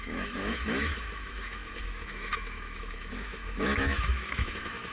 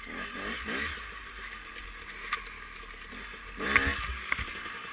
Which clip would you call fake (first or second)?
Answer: first